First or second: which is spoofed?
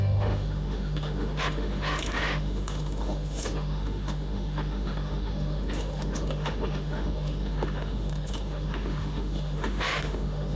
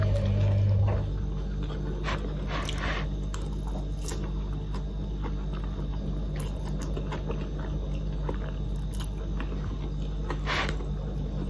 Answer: first